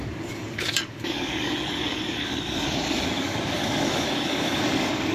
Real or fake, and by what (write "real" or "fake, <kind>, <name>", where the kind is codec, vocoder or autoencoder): fake, codec, DAC